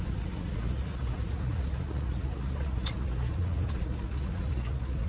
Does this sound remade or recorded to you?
remade